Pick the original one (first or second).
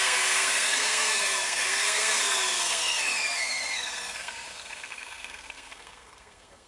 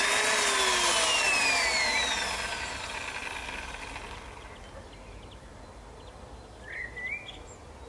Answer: second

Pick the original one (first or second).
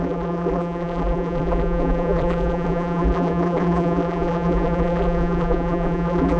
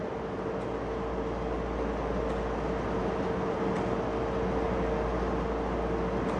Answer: second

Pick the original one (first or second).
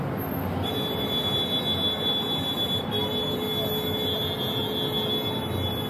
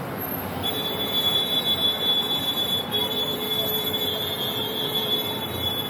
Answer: first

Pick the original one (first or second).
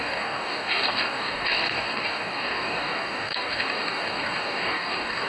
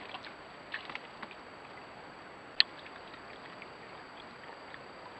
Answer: second